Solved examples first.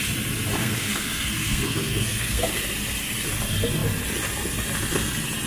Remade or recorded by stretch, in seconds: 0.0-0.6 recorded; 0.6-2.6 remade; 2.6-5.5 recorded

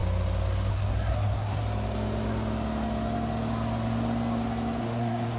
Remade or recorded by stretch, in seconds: 0.0-0.7 recorded; 0.7-1.6 remade; 1.6-4.8 recorded; 4.8-5.4 remade

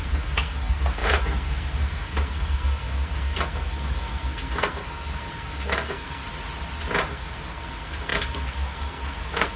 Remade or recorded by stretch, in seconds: 0.0-6.2 remade; 6.2-7.1 recorded; 7.1-9.6 remade

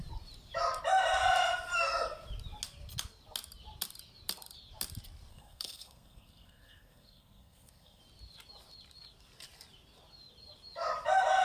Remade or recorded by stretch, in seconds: 0.0-5.3 recorded; 5.3-8.0 remade; 8.0-11.4 recorded

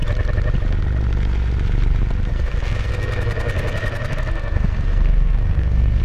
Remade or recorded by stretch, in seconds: 0.0-2.3 recorded; 2.3-6.0 remade

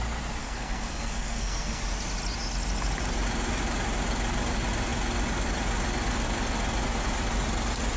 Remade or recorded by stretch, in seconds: 0.0-0.4 recorded; 0.4-1.8 remade; 1.8-8.0 recorded

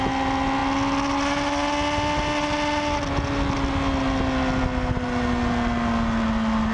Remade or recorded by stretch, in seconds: 0.0-6.7 recorded

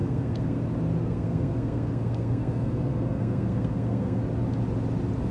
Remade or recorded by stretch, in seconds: 0.0-0.6 remade; 0.6-1.0 recorded; 1.0-4.2 remade; 4.2-5.3 recorded